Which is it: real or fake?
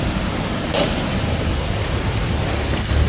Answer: real